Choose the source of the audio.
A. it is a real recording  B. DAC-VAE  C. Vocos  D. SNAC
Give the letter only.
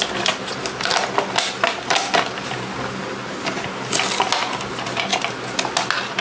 A